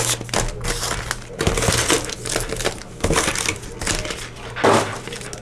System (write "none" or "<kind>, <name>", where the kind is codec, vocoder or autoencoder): none